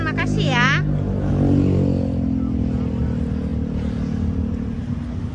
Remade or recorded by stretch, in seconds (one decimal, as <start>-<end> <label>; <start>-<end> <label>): 0.0-5.3 recorded